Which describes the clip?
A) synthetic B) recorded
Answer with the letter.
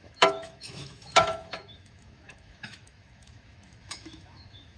A